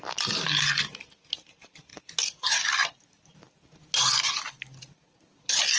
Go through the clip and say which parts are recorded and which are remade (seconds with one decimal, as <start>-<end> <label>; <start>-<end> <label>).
0.0-5.8 recorded